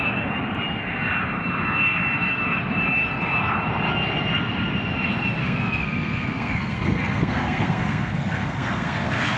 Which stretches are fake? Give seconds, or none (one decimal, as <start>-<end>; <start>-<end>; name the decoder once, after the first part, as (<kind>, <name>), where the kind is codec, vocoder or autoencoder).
5.4-9.4 (codec, SNAC)

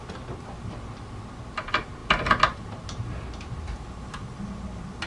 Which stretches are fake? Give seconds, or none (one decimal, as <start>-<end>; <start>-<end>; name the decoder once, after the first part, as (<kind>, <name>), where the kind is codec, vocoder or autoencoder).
none